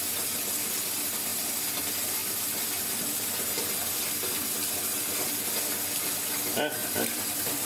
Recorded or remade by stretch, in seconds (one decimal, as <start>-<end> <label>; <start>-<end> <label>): 0.0-1.3 recorded; 1.3-1.8 remade; 1.8-6.8 recorded; 6.8-7.7 remade